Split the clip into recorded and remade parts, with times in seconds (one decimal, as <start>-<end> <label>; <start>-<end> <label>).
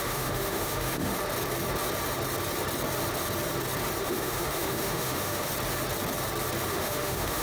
0.0-1.1 remade; 1.1-4.0 recorded; 4.0-5.5 remade; 5.5-6.7 recorded; 6.7-7.4 remade